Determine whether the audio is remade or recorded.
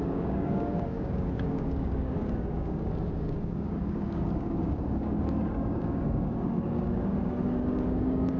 remade